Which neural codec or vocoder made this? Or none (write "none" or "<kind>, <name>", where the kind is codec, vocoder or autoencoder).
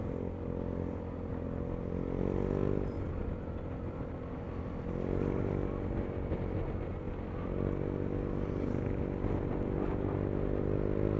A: none